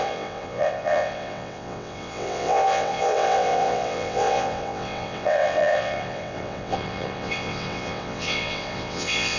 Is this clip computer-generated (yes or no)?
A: yes